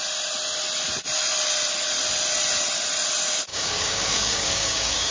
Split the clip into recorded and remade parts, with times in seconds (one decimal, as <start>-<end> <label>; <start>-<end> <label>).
0.0-3.5 recorded; 3.5-5.1 remade